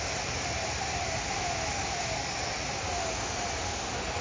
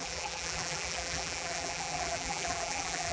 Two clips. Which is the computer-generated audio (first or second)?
second